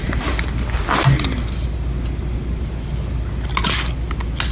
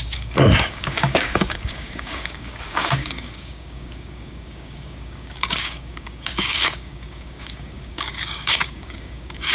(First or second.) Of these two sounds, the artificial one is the second